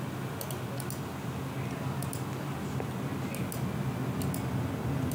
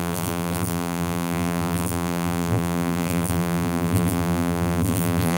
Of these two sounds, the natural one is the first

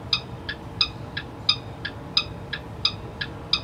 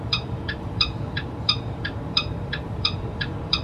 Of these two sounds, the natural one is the first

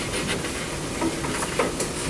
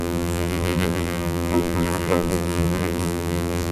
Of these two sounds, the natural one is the first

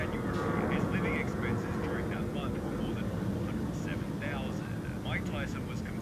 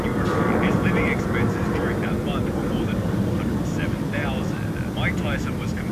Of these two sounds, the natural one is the first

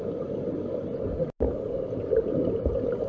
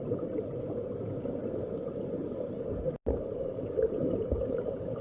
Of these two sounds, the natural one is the first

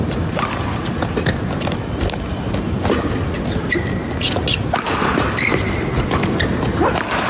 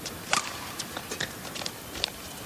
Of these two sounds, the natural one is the first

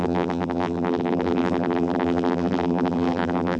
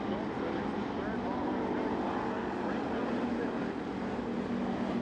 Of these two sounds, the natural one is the second